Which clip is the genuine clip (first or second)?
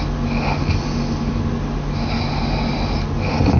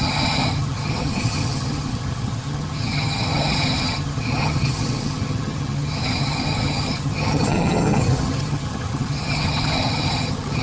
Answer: first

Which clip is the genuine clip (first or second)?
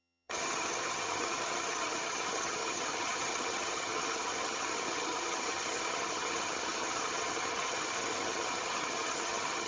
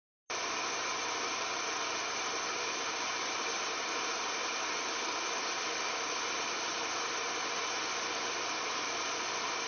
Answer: second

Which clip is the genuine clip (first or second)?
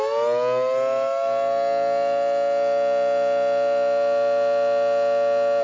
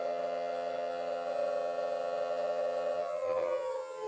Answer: first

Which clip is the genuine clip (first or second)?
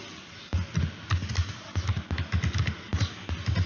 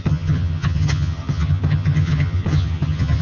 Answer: first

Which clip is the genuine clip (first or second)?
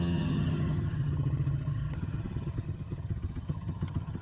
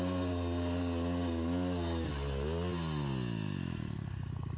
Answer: second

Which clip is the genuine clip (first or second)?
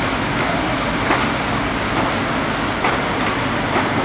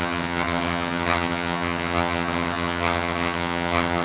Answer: first